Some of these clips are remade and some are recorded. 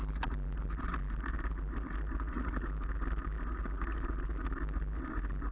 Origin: recorded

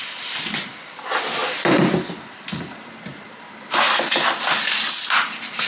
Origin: recorded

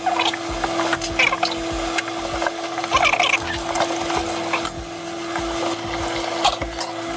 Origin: recorded